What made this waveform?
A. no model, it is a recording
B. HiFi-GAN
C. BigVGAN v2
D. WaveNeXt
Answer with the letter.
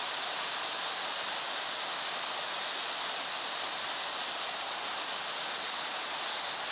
A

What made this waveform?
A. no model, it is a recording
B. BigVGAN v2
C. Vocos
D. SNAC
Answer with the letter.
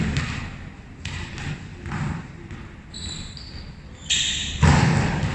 A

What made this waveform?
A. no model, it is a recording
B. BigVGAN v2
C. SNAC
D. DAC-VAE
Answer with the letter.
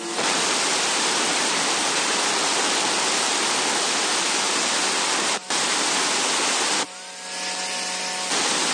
A